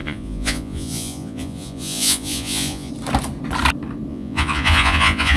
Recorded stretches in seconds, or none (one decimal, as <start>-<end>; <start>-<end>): 2.9-4.1